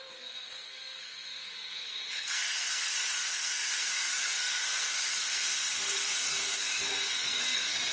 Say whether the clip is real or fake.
fake